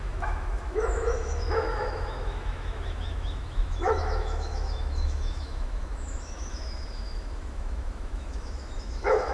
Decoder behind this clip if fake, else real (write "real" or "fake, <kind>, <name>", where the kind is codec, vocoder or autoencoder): fake, autoencoder, DAC-VAE